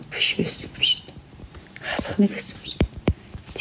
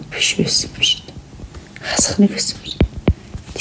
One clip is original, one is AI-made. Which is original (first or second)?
second